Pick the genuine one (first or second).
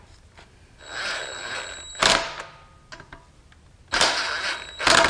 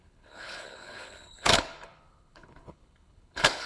first